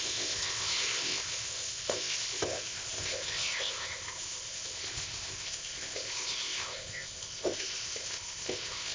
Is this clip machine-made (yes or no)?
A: yes